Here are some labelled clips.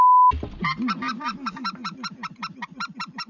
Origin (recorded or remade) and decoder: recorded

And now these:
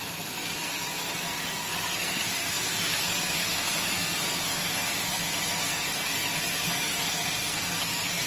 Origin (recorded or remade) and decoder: remade, codec, SNAC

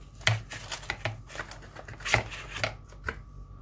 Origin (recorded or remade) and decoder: recorded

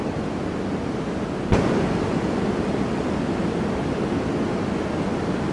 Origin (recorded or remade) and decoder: recorded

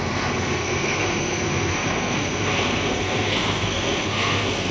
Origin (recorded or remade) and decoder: remade, codec, SNAC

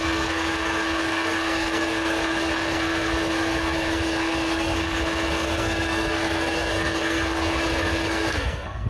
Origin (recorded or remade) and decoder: remade, codec, SNAC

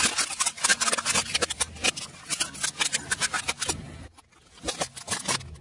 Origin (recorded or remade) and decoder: recorded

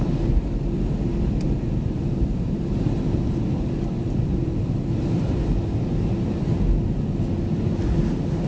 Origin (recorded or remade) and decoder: recorded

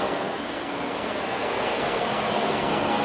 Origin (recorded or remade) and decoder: remade, codec, SNAC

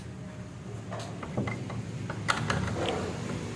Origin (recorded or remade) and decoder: recorded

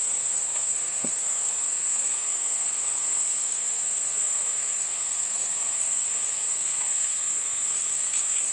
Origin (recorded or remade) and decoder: remade, codec, SNAC